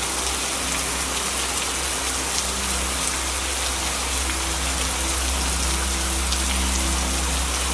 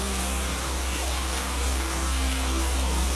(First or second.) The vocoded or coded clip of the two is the second